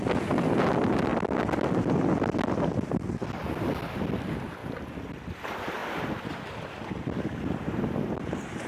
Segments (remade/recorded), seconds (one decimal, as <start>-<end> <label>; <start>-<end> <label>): 0.0-8.7 recorded